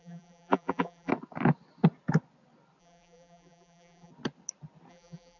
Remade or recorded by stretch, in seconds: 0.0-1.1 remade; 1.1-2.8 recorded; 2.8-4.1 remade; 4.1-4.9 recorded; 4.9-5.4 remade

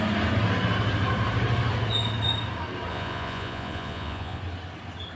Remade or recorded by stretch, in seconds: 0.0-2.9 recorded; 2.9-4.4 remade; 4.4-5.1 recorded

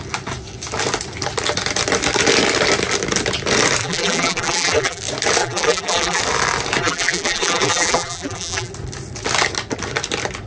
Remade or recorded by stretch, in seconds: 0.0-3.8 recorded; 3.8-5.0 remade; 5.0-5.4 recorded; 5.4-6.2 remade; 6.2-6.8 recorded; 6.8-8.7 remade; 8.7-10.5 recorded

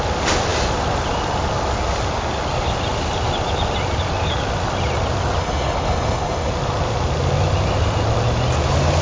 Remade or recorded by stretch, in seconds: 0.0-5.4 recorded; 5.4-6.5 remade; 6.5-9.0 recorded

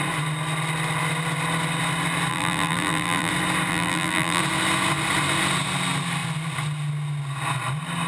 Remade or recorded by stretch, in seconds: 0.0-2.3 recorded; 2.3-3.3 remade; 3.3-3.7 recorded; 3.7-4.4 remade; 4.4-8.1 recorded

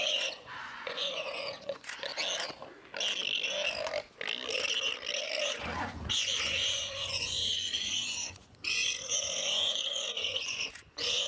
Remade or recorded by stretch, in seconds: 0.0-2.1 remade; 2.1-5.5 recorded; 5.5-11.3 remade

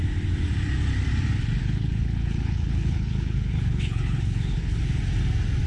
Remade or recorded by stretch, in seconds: 0.0-1.6 recorded; 1.6-5.0 remade; 5.0-5.7 recorded

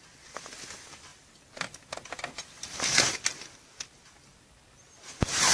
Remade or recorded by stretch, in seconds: 0.0-5.5 recorded